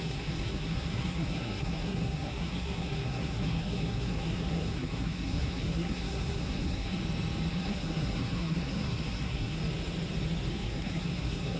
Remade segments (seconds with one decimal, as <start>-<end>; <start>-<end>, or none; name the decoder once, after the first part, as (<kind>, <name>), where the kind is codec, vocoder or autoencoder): 0.0-7.0 (codec, SNAC); 7.5-9.6; 10.5-11.6